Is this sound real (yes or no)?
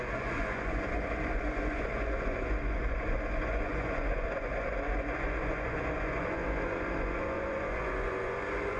no